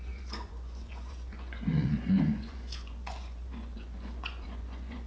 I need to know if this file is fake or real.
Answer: fake